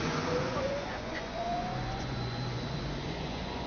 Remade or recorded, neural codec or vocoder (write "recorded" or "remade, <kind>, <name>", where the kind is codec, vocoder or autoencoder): remade, vocoder, Vocos